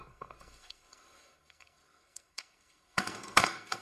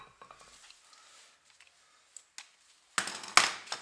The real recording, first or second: second